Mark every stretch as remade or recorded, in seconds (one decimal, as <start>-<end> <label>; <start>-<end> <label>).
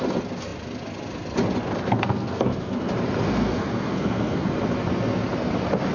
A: 0.0-1.9 recorded; 1.9-2.9 remade; 2.9-3.4 recorded; 3.4-4.5 remade; 4.5-5.9 recorded